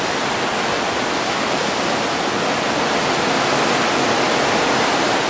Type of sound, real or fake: real